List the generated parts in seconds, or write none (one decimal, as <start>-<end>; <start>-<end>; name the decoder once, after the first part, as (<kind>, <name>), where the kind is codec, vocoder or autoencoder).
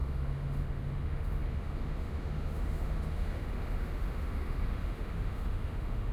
0.0-6.1 (autoencoder, DAC-VAE)